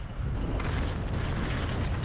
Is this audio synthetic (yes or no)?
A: no